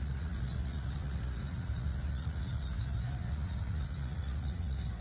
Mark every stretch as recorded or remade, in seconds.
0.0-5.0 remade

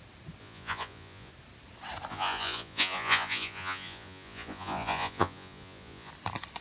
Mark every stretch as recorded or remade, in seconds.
0.0-0.4 recorded; 0.4-1.3 remade; 1.3-2.1 recorded; 2.1-6.1 remade; 6.1-6.6 recorded

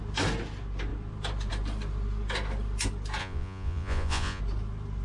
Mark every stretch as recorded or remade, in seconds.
0.0-3.2 recorded; 3.2-4.4 remade; 4.4-5.0 recorded